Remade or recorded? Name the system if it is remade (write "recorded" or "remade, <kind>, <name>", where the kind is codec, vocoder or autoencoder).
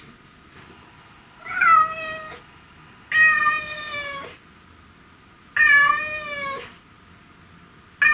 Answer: recorded